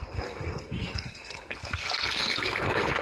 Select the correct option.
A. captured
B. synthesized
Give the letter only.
B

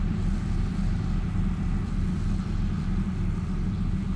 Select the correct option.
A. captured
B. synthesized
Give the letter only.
A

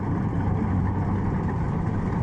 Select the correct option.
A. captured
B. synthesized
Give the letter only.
A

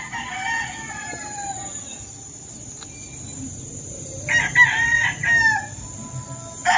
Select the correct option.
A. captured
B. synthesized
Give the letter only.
A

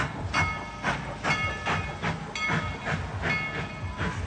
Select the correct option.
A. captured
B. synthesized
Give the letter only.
A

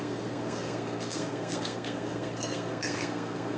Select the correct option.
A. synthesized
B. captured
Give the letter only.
A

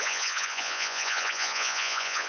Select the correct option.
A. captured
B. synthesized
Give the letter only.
B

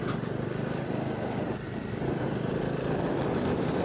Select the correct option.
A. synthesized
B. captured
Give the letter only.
B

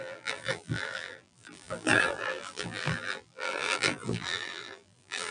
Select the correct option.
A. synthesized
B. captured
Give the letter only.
A